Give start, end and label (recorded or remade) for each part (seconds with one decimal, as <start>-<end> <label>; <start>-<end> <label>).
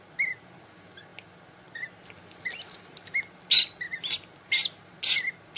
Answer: 0.0-5.6 recorded